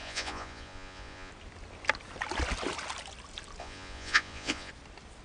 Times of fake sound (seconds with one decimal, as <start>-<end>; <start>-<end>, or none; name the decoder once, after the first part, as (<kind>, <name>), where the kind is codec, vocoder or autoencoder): 0.0-1.3 (vocoder, Vocos); 3.6-4.7